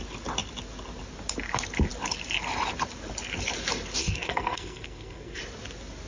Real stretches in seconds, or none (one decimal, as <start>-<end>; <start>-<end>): 0.0-4.0; 5.4-6.1

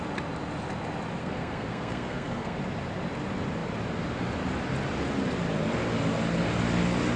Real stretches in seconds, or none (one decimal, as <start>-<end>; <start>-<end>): 0.0-1.2; 2.6-7.2